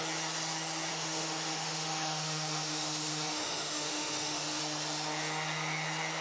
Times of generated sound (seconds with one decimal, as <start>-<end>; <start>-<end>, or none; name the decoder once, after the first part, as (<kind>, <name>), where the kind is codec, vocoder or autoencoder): 0.9-4.6 (autoencoder, DAC-VAE)